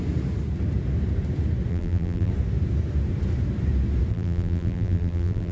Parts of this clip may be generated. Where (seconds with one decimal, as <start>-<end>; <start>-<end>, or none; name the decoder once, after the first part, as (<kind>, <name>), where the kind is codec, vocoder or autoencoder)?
1.7-2.3 (vocoder, BigVGAN v2); 4.1-5.5